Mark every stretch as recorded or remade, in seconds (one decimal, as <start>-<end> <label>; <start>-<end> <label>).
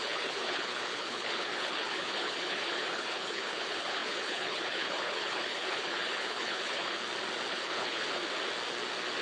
0.0-7.0 remade; 7.0-7.5 recorded; 7.5-8.2 remade; 8.2-9.2 recorded